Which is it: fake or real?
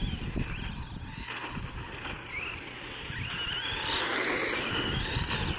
real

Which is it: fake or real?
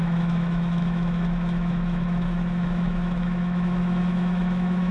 fake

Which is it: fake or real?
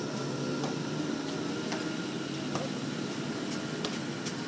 real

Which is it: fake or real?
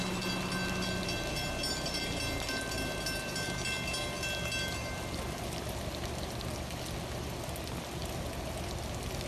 real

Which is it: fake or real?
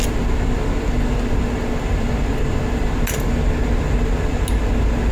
real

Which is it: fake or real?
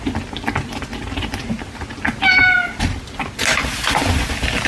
real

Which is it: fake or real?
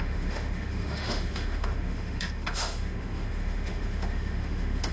fake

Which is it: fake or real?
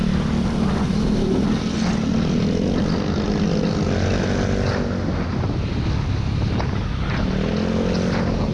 real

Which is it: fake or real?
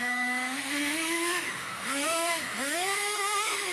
fake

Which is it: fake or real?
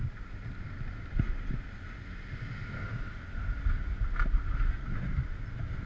real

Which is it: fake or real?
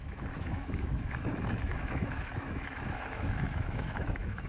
fake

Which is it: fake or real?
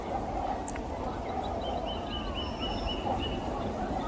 real